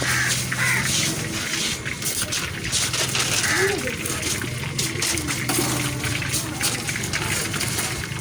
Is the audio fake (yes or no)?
no